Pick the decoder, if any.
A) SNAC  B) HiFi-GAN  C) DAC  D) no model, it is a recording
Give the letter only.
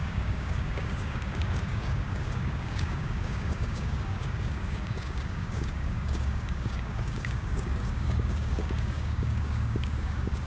C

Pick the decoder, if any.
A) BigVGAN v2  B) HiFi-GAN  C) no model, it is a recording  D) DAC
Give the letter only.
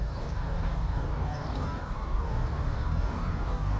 D